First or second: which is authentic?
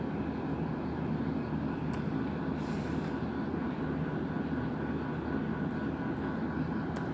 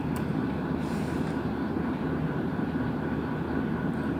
first